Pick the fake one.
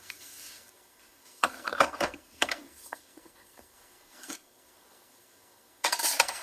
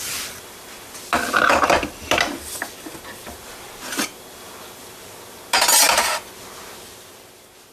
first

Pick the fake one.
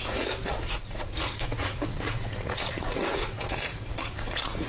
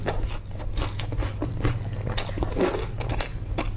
first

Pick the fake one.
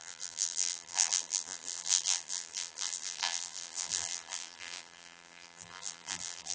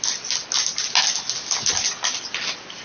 first